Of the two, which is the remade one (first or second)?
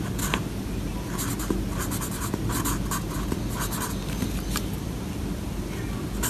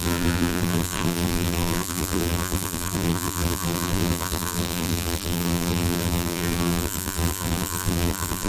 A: second